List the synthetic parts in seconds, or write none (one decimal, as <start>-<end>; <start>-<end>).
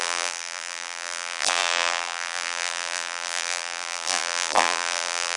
0.0-5.4